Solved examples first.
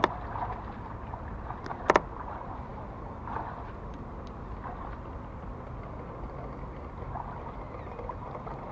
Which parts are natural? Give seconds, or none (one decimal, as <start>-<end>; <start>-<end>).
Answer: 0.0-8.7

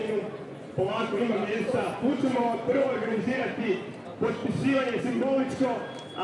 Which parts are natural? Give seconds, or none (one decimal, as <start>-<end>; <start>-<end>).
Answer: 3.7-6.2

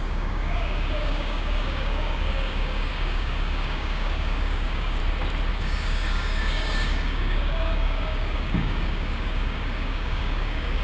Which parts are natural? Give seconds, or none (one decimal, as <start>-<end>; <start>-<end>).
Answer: 5.0-5.5

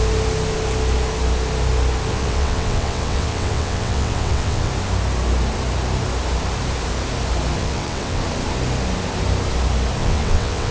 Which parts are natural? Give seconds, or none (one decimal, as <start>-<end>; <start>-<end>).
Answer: 0.0-2.1; 4.7-7.6; 8.2-10.0

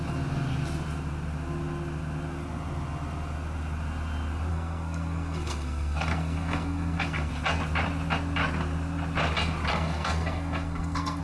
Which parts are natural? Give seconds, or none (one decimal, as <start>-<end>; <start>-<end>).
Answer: 0.0-4.5; 7.3-9.7